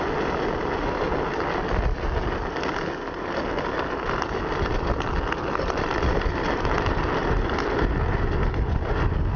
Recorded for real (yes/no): yes